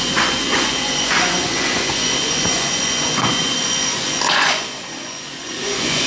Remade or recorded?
remade